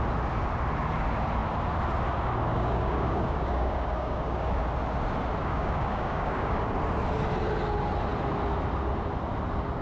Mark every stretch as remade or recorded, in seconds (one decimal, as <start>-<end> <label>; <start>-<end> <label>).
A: 0.0-2.5 recorded; 2.5-4.5 remade; 4.5-5.4 recorded; 5.4-6.6 remade; 6.6-9.8 recorded